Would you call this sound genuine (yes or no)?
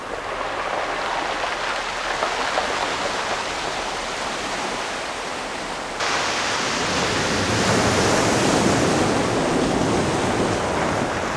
yes